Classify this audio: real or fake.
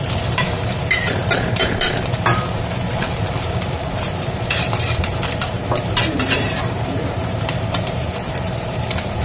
fake